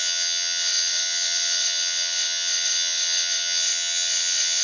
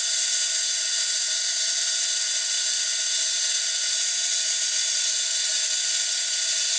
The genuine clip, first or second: second